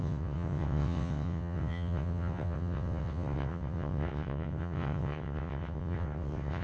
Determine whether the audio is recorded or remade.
remade